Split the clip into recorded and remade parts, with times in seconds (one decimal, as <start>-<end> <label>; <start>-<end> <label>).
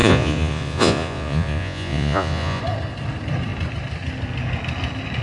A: 0.0-2.6 remade; 2.6-5.2 recorded